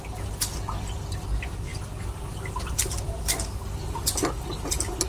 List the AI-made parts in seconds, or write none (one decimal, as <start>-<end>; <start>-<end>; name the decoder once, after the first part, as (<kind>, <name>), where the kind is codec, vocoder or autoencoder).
none